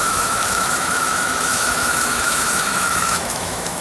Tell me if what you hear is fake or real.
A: fake